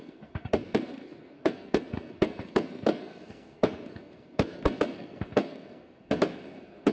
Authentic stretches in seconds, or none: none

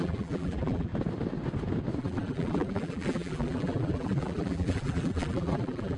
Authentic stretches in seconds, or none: 0.9-2.0